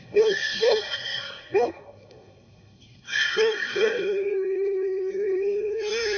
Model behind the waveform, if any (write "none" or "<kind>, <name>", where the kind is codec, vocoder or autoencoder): codec, SNAC